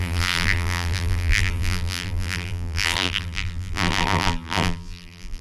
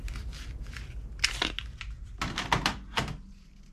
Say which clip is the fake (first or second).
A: first